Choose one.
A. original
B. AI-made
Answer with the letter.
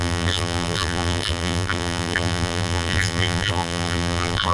B